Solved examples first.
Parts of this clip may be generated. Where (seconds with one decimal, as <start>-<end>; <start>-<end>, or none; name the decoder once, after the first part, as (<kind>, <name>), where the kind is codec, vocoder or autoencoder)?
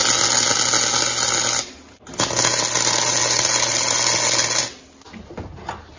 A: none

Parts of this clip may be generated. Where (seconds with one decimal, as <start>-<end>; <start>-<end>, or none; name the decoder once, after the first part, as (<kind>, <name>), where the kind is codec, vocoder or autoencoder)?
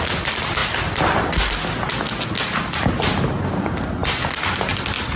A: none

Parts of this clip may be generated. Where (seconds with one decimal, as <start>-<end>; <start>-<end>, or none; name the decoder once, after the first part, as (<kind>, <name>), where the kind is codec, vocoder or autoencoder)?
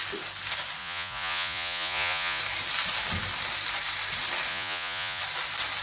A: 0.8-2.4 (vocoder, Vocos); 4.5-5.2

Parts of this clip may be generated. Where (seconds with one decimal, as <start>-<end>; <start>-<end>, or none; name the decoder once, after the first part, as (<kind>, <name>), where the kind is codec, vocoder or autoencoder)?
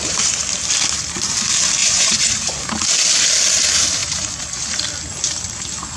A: 1.8-2.7 (vocoder, Vocos)